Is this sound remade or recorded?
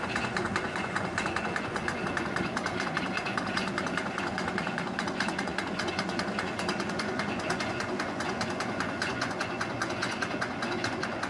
remade